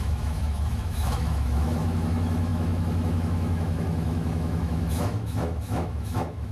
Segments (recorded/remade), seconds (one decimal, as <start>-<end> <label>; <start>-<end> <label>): 0.0-6.5 remade